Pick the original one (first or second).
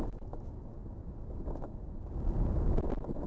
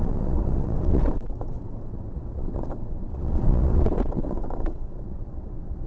first